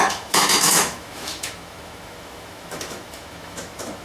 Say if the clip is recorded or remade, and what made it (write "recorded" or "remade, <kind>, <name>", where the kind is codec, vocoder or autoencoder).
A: remade, autoencoder, DAC-VAE